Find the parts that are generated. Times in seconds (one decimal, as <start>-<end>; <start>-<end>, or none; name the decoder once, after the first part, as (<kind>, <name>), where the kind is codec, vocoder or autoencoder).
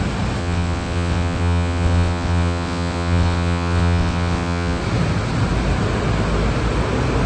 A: 0.4-4.8 (vocoder, WaveNeXt)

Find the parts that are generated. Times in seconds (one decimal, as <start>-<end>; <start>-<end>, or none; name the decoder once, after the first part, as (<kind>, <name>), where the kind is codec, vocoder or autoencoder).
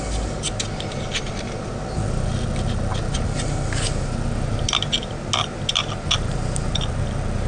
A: none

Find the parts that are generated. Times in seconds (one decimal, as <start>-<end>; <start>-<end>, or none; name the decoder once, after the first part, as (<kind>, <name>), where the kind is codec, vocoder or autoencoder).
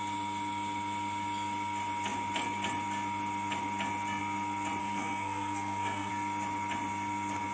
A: 4.8-6.1 (codec, SNAC)